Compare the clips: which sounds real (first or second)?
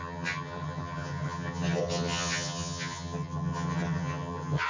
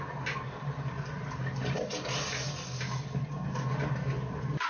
second